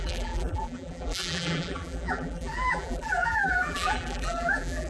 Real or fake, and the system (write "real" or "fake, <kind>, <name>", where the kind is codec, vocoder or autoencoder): fake, vocoder, BigVGAN v2